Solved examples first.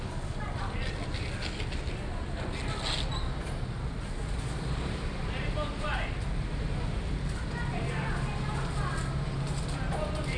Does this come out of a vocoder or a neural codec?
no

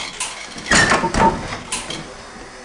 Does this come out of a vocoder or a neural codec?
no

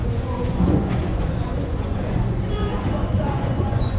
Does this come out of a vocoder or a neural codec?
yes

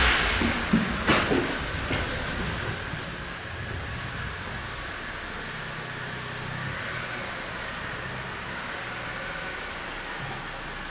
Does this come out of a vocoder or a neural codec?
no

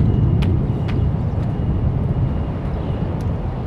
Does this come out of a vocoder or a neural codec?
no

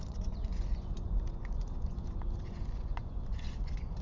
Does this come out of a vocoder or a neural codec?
yes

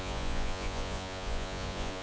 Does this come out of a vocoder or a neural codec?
yes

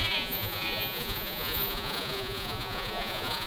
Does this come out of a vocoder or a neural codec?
yes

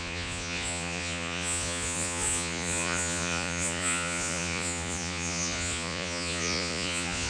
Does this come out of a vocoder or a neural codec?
yes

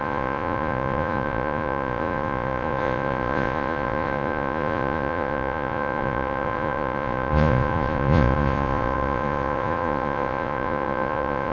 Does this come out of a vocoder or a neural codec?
yes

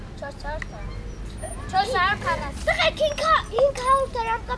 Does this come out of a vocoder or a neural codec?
no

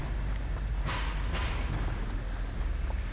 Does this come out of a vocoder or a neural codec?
no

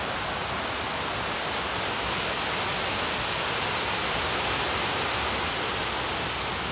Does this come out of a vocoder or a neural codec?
no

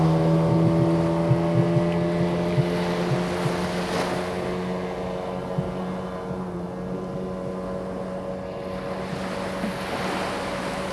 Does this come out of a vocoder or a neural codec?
no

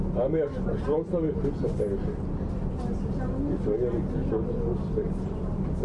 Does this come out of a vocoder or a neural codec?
no